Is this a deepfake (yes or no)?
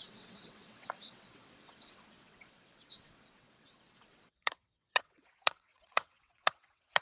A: yes